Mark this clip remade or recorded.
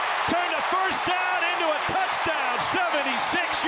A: recorded